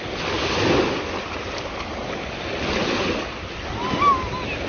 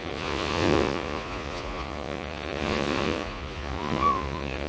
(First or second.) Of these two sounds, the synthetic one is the second